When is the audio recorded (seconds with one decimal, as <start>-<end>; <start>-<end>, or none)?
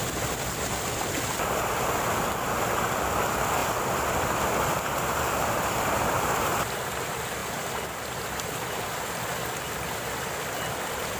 0.0-11.2